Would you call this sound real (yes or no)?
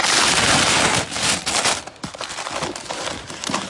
yes